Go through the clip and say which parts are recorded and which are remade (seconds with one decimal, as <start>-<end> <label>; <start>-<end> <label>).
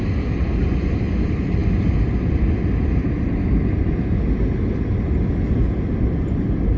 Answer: 0.0-6.8 recorded